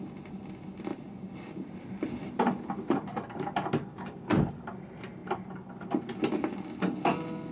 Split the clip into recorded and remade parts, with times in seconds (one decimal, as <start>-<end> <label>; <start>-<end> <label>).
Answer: 0.0-0.9 recorded; 0.9-4.5 remade; 4.5-5.2 recorded; 5.2-6.0 remade; 6.0-7.5 recorded